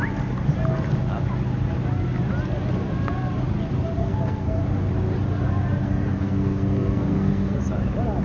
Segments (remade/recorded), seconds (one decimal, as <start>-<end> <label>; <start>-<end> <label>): 0.0-4.0 recorded; 4.0-4.6 remade; 4.6-5.8 recorded; 5.8-7.6 remade; 7.6-8.2 recorded